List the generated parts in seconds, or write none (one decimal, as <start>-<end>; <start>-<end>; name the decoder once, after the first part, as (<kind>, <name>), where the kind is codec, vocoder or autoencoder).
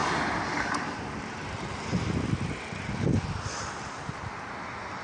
0.0-2.1 (vocoder, BigVGAN v2)